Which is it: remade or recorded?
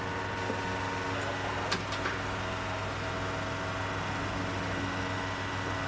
recorded